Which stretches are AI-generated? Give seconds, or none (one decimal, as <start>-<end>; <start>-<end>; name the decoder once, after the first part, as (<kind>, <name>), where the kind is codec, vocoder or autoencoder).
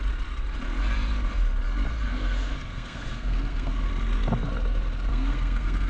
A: 2.1-3.9 (codec, SNAC); 5.1-5.9